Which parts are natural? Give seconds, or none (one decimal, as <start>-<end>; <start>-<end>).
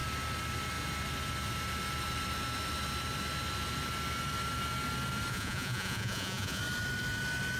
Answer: 0.0-5.3; 6.6-7.6